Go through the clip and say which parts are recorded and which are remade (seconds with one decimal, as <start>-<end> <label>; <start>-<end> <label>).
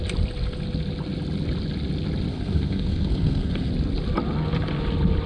0.0-2.3 recorded; 2.3-3.7 remade; 3.7-5.3 recorded